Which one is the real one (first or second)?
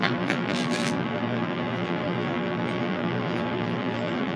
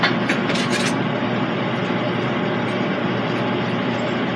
second